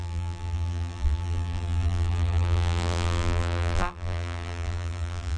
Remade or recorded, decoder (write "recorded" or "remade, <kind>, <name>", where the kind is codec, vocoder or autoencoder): remade, vocoder, BigVGAN v2